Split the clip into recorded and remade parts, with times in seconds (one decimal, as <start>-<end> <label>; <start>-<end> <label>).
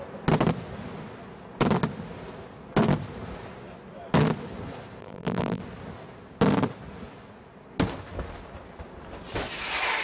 0.0-5.0 recorded; 5.0-5.6 remade; 5.6-10.0 recorded